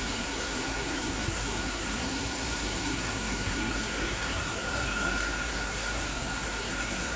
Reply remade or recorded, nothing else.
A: remade